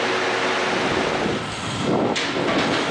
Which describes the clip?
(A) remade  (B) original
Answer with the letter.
B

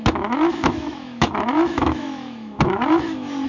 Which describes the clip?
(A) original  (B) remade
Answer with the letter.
B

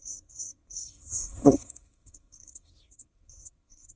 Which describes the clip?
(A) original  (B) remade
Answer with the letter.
B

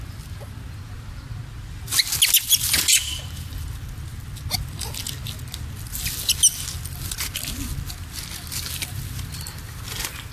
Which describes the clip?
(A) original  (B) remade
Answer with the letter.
A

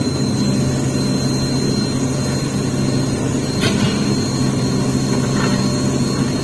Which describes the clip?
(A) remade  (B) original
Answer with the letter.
B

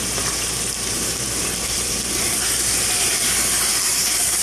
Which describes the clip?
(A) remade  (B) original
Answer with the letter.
A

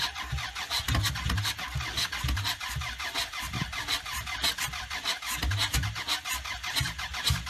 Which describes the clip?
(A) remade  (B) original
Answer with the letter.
B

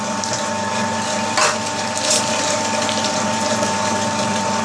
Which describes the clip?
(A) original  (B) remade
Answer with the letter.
A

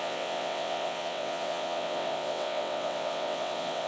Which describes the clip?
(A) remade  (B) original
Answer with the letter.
A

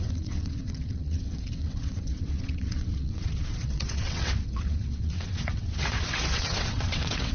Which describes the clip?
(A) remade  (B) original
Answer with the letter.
A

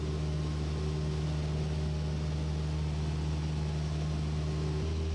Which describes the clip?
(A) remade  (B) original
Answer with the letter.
B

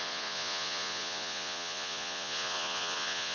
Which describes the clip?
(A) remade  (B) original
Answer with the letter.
A